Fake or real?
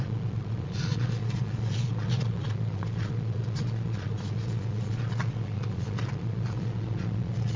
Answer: fake